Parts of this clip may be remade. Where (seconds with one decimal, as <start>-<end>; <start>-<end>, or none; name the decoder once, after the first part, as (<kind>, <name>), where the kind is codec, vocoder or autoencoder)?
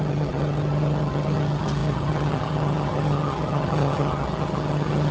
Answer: 0.0-5.1 (vocoder, HiFi-GAN)